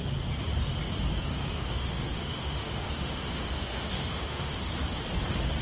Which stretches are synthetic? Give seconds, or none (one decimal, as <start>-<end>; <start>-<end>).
1.2-4.6